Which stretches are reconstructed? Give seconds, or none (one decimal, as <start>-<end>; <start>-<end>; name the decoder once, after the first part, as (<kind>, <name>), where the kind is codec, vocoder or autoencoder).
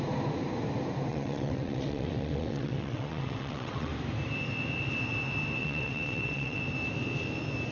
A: 1.1-3.9 (vocoder, WaveNeXt); 5.6-6.6